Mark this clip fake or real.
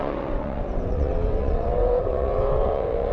fake